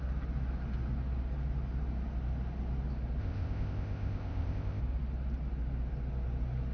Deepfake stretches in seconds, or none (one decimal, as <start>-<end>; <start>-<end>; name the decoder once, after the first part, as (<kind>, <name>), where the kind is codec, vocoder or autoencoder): 3.2-4.8 (codec, ZipCodec)